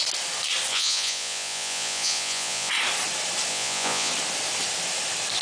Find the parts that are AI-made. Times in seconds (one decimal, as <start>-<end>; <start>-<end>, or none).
0.7-2.7; 3.5-4.1